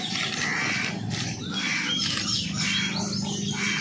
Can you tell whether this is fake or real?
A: real